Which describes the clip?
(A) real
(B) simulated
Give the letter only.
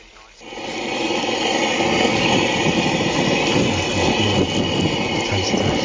A